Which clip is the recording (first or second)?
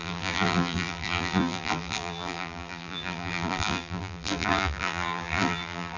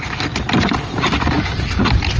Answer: second